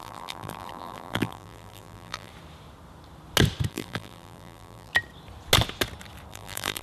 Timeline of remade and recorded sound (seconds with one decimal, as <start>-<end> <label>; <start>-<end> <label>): 0.0-2.3 remade; 2.3-3.7 recorded; 3.7-4.9 remade; 4.9-6.3 recorded; 6.3-6.8 remade